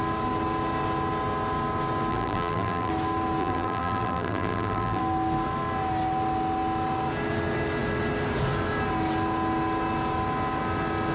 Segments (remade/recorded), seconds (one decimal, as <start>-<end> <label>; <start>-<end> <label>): 0.0-2.1 recorded; 2.1-2.9 remade; 2.9-3.4 recorded; 3.4-5.0 remade; 5.0-11.1 recorded